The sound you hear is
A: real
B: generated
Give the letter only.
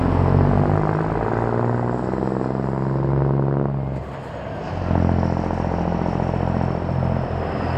A